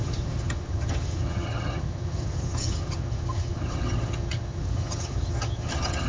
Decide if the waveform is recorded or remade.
remade